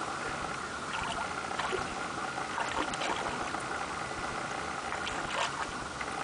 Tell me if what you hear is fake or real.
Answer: real